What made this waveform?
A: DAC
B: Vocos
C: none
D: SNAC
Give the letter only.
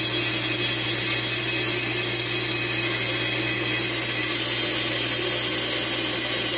C